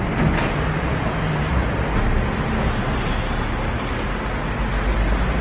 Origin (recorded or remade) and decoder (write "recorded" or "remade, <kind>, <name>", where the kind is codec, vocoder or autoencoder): recorded